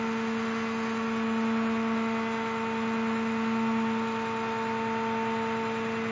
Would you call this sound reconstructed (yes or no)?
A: no